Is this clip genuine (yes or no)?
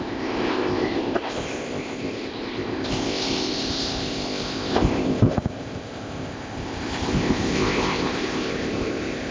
no